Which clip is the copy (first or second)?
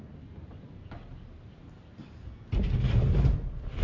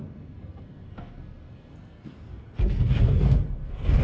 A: second